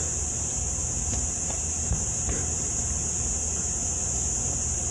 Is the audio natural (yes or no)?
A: no